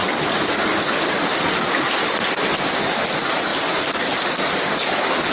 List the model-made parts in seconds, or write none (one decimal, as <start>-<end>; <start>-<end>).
none